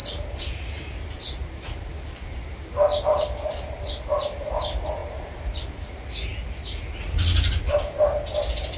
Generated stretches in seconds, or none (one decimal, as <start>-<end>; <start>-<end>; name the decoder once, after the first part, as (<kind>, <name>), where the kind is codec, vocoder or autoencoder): none